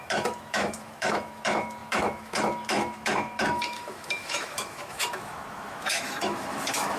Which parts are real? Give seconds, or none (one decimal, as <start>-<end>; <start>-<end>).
none